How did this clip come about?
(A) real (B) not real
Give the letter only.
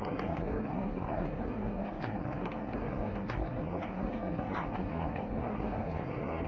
B